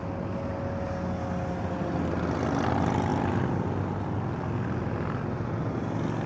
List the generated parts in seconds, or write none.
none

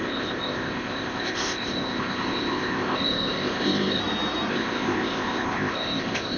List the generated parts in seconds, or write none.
0.0-4.0 (codec, ZipCodec); 4.5-6.4